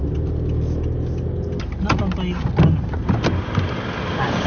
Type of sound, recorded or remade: recorded